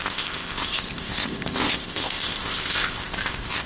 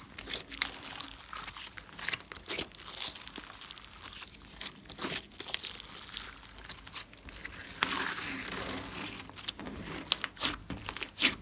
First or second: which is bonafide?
second